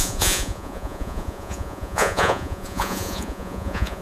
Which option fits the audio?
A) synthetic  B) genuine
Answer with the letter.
A